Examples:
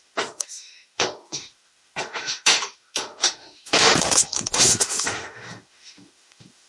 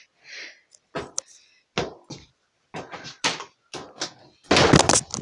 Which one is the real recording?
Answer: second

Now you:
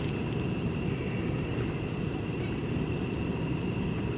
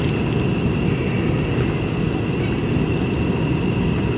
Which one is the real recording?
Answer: second